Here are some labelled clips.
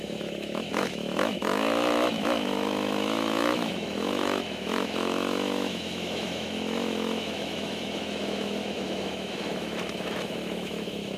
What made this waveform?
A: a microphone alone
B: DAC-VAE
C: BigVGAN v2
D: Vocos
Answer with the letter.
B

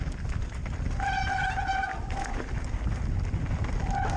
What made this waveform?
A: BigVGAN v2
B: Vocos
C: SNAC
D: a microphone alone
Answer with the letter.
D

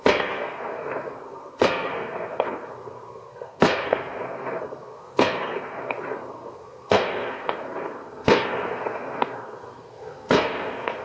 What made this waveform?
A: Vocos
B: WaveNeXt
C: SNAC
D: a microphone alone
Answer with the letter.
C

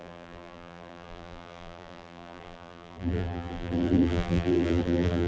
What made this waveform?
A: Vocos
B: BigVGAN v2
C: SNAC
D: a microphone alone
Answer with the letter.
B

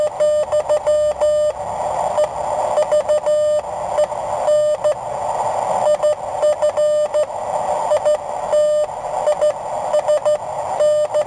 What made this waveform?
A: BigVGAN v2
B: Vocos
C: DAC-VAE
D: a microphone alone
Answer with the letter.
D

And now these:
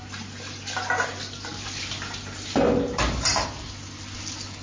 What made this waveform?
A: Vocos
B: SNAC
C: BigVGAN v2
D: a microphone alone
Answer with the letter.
D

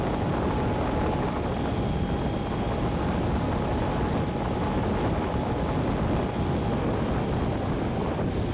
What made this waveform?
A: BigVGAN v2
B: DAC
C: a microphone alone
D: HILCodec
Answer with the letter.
C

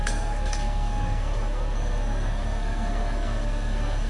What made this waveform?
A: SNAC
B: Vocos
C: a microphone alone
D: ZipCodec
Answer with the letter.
A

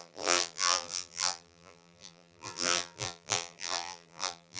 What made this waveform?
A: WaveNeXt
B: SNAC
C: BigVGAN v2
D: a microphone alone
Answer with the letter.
C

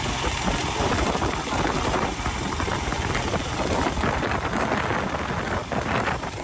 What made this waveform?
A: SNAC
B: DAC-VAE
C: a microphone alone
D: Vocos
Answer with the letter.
C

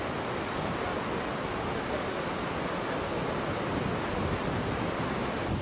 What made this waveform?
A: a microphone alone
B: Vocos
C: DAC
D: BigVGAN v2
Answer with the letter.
A